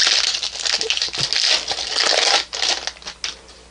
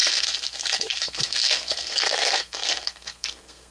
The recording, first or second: first